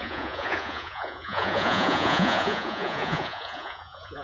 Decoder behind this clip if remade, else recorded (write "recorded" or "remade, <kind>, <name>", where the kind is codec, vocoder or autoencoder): remade, vocoder, Vocos